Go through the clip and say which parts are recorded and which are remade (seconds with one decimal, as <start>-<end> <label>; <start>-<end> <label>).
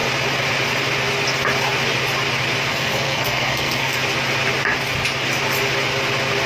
0.0-2.7 recorded; 2.7-4.0 remade; 4.0-6.5 recorded